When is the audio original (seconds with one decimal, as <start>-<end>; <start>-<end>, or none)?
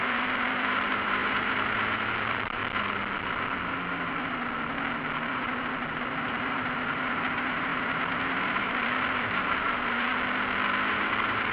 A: 2.6-5.9; 10.1-10.9